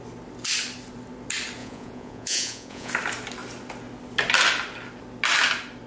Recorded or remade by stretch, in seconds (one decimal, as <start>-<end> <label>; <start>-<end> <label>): 0.0-1.6 recorded; 1.6-2.9 remade; 2.9-5.9 recorded